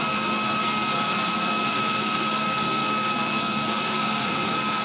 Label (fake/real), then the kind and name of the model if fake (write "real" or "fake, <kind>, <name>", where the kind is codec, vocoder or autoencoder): fake, codec, SNAC